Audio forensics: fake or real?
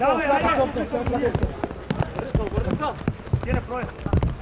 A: real